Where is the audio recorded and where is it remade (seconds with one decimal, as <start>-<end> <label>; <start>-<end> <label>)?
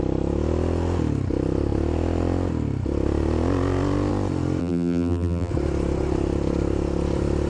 0.0-4.6 recorded; 4.6-5.5 remade; 5.5-7.5 recorded